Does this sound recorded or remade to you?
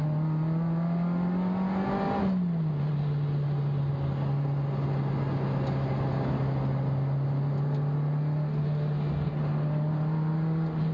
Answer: recorded